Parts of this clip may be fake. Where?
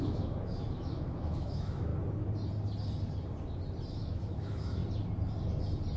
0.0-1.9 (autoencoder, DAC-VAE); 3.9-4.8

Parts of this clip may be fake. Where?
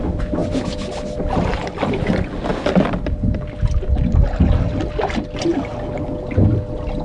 none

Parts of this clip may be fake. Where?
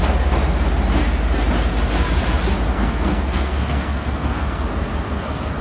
2.7-5.6 (codec, SNAC)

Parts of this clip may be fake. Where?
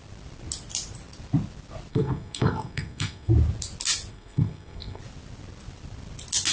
1.9-3.3 (codec, SNAC); 4.1-5.0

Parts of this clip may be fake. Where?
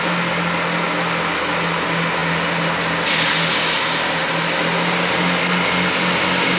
none